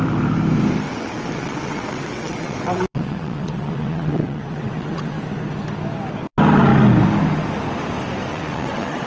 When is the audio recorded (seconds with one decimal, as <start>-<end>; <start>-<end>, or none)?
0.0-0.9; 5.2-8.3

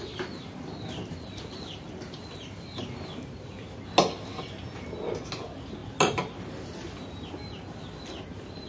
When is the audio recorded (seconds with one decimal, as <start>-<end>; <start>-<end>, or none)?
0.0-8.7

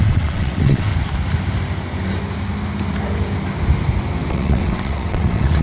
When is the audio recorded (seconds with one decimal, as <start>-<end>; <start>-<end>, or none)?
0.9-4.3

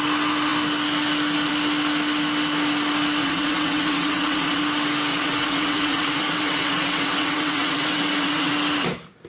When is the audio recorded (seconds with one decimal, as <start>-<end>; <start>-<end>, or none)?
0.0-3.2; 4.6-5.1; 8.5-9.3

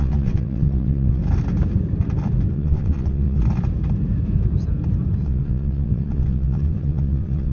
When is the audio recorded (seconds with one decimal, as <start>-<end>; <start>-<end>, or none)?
1.2-2.5; 3.4-5.2

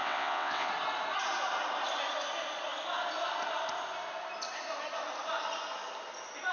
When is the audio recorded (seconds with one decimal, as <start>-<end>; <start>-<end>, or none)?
0.7-6.5